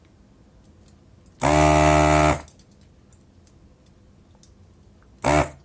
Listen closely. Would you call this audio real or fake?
real